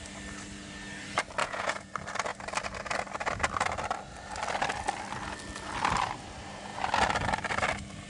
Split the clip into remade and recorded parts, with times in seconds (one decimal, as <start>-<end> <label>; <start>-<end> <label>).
0.0-1.4 recorded; 1.4-1.9 remade; 1.9-8.1 recorded